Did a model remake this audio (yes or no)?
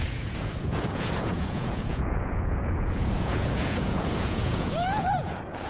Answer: yes